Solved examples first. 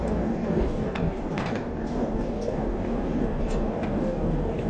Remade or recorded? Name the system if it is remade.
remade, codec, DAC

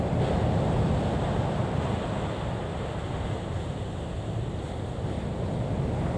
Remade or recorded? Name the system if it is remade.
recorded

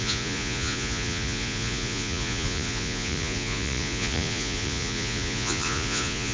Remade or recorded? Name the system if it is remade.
remade, vocoder, Vocos